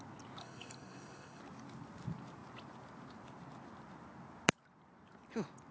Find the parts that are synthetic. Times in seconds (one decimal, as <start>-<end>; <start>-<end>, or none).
0.4-1.4